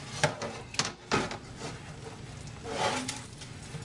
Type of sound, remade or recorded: recorded